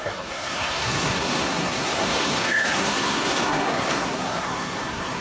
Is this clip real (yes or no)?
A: no